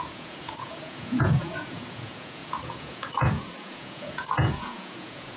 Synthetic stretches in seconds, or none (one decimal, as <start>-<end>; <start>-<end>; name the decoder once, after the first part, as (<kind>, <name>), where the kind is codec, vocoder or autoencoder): 0.0-5.4 (vocoder, Vocos)